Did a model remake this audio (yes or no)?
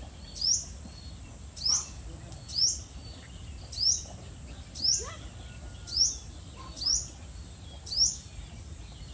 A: no